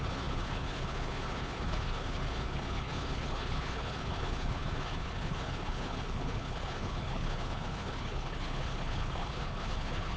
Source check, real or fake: fake